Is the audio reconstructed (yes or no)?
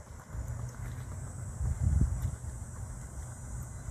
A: no